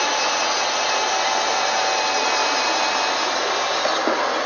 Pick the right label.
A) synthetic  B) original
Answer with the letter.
B